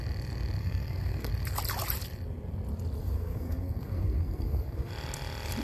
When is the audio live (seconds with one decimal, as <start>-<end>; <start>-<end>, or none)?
0.0-0.6; 1.3-3.0; 4.9-5.6